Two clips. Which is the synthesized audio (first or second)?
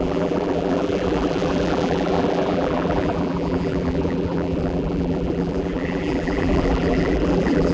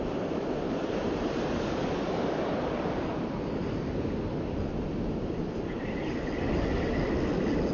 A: first